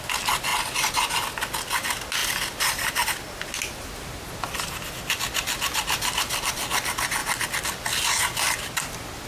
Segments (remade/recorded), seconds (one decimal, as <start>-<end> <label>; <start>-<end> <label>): 0.0-9.3 recorded